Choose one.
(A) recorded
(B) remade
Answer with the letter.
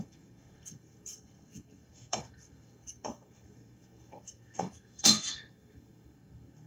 B